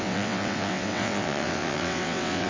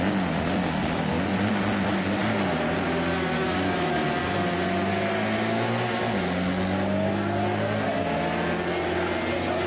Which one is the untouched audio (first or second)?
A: second